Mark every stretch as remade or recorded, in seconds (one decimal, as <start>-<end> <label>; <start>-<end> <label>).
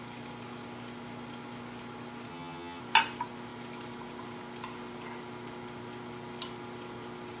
0.0-2.3 recorded; 2.3-2.8 remade; 2.8-7.4 recorded